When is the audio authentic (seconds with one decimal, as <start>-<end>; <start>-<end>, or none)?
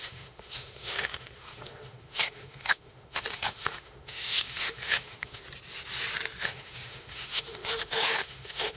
5.4-6.4